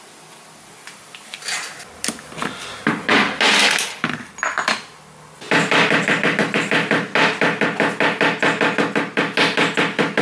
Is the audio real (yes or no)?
yes